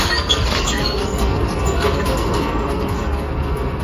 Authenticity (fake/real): fake